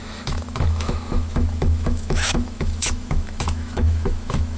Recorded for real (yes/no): no